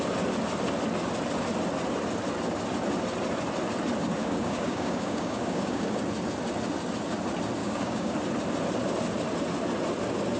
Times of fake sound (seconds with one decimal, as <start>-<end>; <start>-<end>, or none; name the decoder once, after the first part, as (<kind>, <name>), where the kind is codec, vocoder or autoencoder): 4.2-6.0 (codec, DAC); 7.6-8.1